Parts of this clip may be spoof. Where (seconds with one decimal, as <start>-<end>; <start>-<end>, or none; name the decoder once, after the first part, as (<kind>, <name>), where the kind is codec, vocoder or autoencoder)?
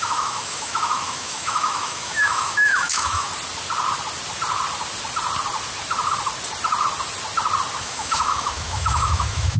0.0-3.3 (autoencoder, DAC-VAE); 7.8-9.6